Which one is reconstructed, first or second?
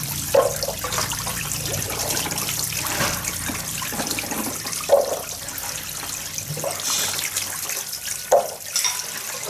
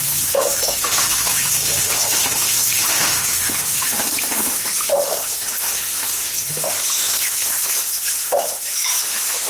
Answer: second